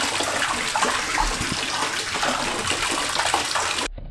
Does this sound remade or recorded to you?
recorded